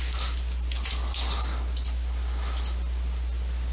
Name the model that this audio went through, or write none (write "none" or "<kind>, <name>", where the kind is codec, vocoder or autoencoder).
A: none